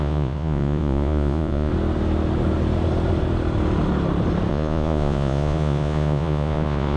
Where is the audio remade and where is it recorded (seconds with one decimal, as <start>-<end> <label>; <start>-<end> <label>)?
0.0-1.7 remade; 1.7-4.5 recorded; 4.5-7.0 remade